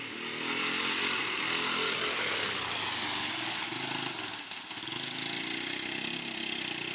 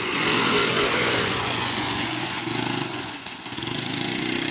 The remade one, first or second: second